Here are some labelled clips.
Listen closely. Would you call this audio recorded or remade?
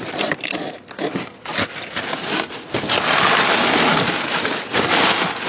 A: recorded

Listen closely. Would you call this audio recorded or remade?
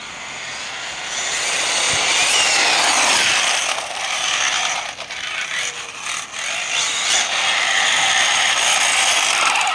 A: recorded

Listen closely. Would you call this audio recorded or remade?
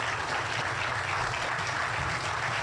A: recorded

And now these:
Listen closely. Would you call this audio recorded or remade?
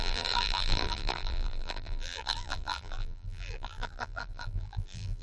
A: remade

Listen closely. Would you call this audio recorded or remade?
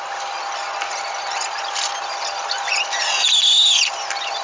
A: recorded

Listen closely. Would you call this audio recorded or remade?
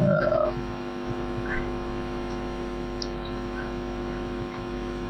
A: remade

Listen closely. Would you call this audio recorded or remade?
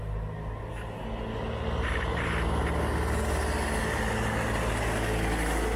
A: recorded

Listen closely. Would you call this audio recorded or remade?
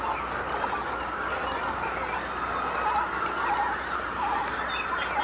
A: recorded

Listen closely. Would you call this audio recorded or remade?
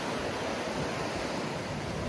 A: recorded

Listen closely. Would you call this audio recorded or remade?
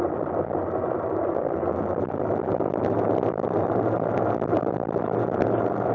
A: recorded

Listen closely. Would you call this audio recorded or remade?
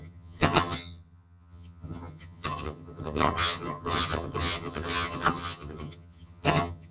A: remade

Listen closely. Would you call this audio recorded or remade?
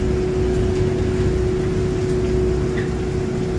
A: recorded